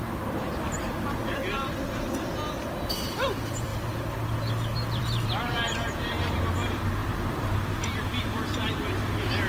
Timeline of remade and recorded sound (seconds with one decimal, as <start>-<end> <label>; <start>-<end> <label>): 0.0-1.4 remade; 1.4-2.9 recorded; 2.9-3.7 remade; 3.7-5.0 recorded; 5.0-9.5 remade